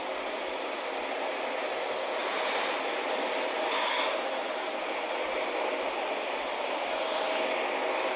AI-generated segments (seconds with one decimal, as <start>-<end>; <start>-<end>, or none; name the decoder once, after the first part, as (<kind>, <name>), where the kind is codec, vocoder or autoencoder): none